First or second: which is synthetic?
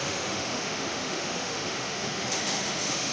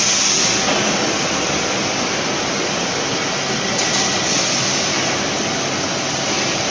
first